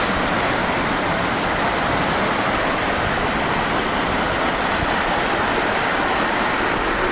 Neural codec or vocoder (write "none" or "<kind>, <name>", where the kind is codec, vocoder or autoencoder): none